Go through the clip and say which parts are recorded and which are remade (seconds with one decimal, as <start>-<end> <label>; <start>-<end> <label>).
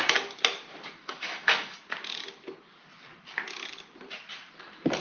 0.0-1.0 recorded; 1.0-1.8 remade; 1.8-5.0 recorded